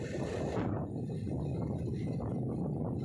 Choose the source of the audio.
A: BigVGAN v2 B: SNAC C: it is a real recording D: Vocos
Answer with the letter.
C